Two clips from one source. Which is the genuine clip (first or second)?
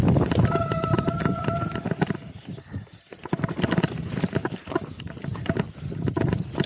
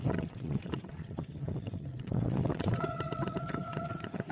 first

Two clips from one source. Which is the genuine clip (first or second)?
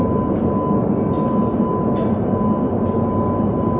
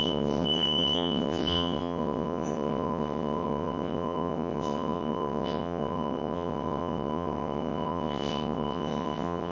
first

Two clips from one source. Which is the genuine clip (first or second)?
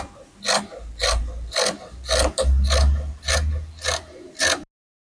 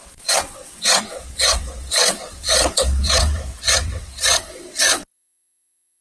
first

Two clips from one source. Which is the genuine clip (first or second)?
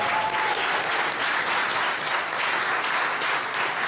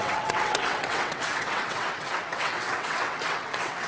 first